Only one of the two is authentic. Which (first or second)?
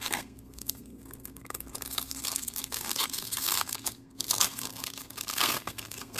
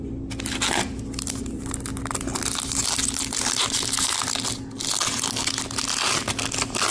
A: second